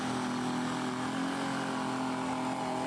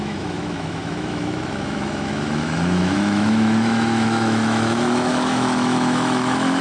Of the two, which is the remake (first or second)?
second